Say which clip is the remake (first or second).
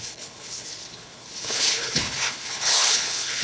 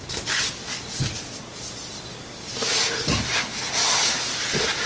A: first